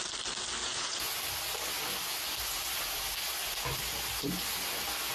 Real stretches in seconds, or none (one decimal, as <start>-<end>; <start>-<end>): 0.0-0.6; 1.2-5.1